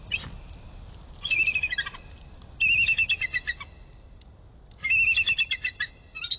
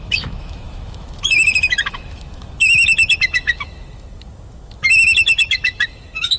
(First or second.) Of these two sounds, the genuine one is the first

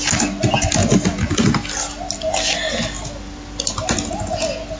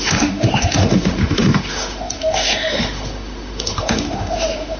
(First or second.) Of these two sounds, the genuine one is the first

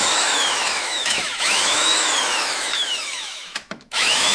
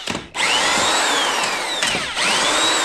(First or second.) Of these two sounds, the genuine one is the second